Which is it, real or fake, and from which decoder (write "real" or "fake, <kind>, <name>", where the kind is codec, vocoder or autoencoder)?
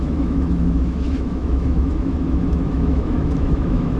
fake, autoencoder, DAC-VAE